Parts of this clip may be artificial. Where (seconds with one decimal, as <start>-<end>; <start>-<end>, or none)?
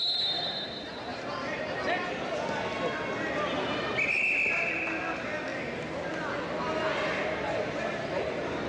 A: 1.1-2.3; 5.5-6.3